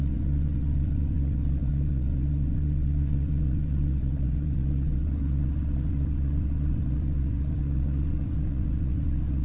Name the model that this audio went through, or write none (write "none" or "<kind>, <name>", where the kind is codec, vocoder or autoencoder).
vocoder, WaveNeXt